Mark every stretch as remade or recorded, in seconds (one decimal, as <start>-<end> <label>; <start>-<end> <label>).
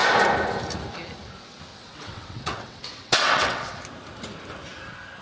0.0-1.7 recorded; 1.7-3.7 remade; 3.7-5.2 recorded